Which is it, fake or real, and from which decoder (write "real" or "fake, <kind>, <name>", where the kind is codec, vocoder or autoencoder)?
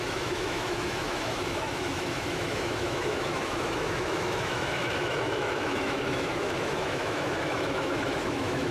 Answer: fake, autoencoder, DAC-VAE